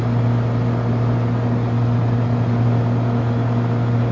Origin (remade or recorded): recorded